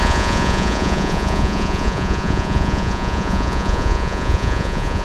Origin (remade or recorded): remade